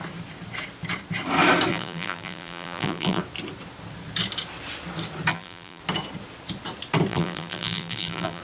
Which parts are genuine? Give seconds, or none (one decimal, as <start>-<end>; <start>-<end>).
0.0-1.7; 3.2-5.3; 5.8-7.1